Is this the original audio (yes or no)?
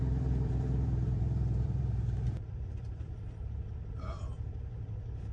no